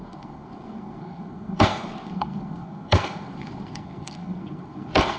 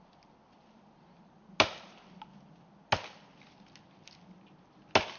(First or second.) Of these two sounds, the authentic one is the second